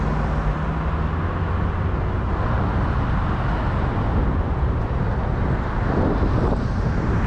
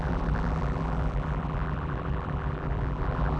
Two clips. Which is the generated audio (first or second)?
second